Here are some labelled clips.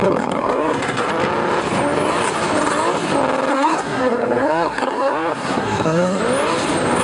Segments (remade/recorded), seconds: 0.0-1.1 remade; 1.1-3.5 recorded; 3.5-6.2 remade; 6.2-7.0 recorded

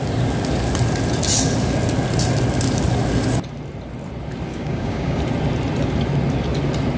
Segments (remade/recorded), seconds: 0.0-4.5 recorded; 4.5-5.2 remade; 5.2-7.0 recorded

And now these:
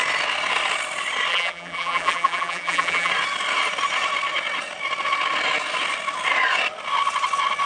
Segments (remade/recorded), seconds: 0.0-1.3 recorded; 1.3-3.1 remade; 3.1-7.7 recorded

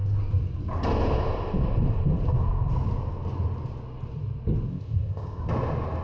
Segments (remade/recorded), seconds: 0.0-4.7 recorded; 4.7-5.4 remade; 5.4-6.0 recorded

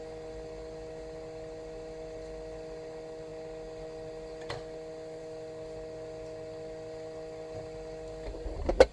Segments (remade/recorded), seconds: 0.0-8.9 recorded

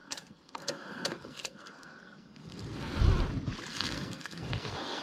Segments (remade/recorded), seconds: 0.0-3.0 remade; 3.0-3.7 recorded; 3.7-5.0 remade